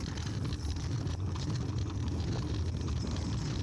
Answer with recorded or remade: remade